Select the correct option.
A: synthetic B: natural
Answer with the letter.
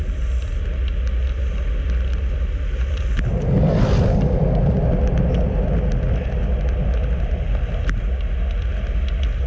B